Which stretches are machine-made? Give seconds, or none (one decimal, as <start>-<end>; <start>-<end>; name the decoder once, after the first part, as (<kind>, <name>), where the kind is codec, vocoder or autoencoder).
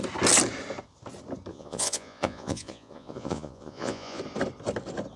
1.5-4.2 (vocoder, Vocos)